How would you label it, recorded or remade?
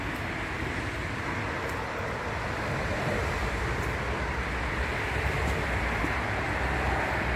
recorded